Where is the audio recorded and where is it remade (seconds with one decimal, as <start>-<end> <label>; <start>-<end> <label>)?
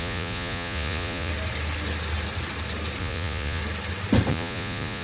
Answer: 0.0-1.3 remade; 1.3-3.0 recorded; 3.0-3.6 remade; 3.6-4.3 recorded; 4.3-5.0 remade